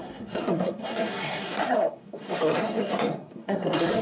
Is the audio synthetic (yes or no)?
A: yes